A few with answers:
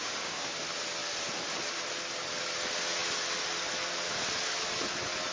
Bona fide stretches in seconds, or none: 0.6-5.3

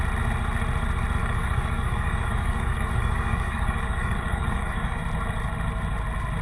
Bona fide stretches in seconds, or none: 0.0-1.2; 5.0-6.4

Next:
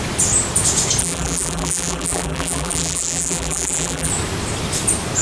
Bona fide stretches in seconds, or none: 0.0-1.0; 4.1-5.2

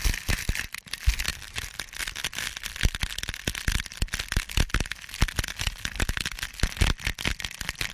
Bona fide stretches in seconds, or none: 0.0-7.9

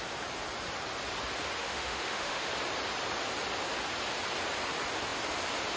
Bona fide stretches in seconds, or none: 0.0-1.6; 2.5-5.8

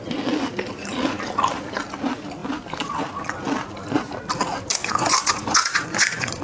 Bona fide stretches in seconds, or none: 0.0-4.7

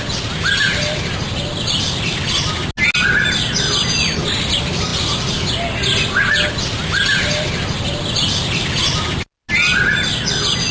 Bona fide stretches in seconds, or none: 0.0-10.7

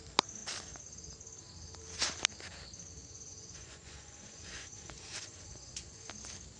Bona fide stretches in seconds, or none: 0.0-3.0; 6.1-6.6